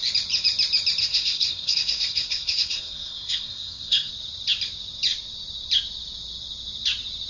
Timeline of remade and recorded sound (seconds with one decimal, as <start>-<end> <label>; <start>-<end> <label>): 0.0-1.0 recorded; 1.0-4.1 remade; 4.1-7.3 recorded